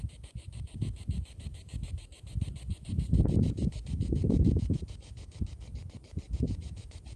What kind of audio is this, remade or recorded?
remade